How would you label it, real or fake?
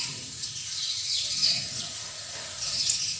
fake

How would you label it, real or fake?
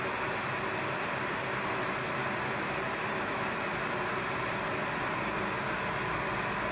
real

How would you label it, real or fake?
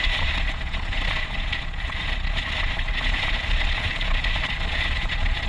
fake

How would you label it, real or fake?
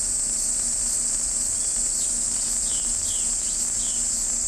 real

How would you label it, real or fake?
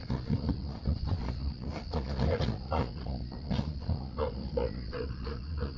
fake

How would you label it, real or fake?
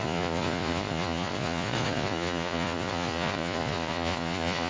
fake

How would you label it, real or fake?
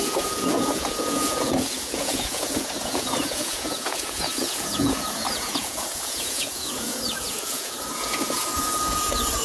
fake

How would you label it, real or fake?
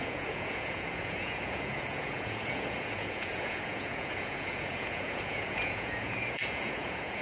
fake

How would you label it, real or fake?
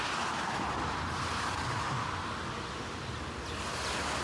real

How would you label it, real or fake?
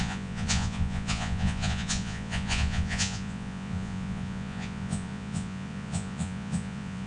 fake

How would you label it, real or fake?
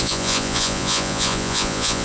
fake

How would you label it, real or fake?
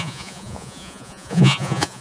fake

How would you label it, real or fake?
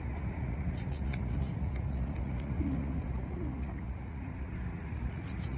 fake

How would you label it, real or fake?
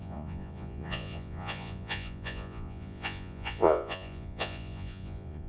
fake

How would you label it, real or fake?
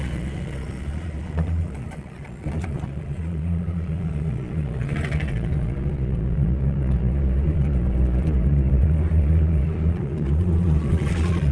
fake